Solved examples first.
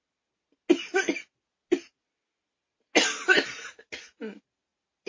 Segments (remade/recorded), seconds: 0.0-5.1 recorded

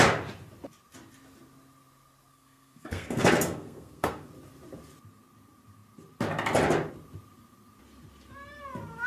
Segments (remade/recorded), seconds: 0.0-2.3 recorded; 2.3-4.3 remade; 4.3-9.1 recorded

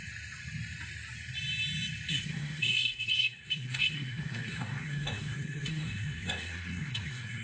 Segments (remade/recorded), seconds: 0.0-2.1 recorded; 2.1-7.4 remade

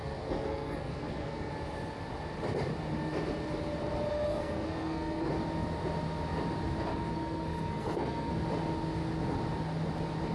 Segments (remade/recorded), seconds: 0.0-1.5 remade; 1.5-4.1 recorded; 4.1-5.3 remade; 5.3-6.9 recorded; 6.9-8.3 remade; 8.3-10.3 recorded

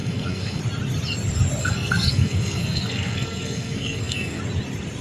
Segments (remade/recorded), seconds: 0.0-0.6 remade; 0.6-1.6 recorded; 1.6-4.4 remade; 4.4-5.0 recorded